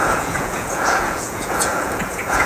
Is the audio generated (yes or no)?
yes